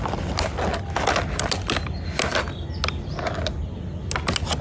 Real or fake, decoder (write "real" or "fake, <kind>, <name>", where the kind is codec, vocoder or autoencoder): real